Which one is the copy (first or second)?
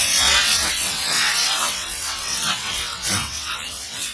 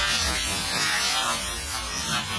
first